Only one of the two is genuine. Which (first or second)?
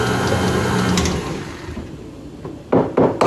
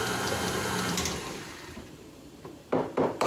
first